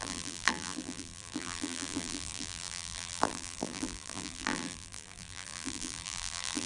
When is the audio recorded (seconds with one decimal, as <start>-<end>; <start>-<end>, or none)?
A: none